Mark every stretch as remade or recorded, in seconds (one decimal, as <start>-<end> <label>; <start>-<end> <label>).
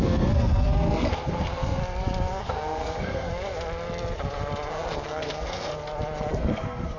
0.0-1.8 remade; 1.8-2.4 recorded; 2.4-3.3 remade; 3.3-4.7 recorded; 4.7-5.7 remade; 5.7-6.3 recorded; 6.3-7.0 remade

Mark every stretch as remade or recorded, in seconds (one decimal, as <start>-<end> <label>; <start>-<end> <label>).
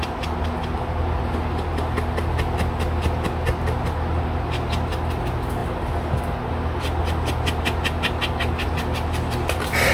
0.0-9.9 recorded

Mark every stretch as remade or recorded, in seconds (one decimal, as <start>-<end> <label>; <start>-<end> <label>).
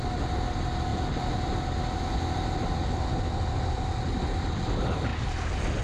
0.0-5.8 recorded